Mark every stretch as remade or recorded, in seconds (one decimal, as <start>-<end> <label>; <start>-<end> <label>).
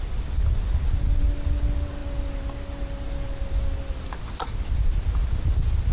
0.0-5.9 recorded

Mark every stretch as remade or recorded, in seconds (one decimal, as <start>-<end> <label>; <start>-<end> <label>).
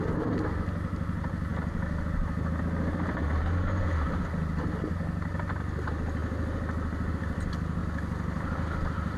0.0-9.2 recorded